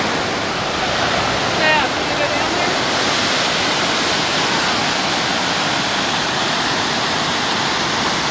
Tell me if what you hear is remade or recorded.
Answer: recorded